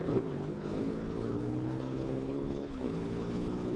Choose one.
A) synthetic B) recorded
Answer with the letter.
A